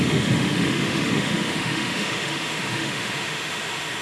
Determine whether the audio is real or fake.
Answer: fake